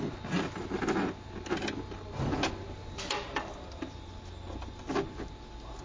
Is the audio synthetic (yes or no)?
no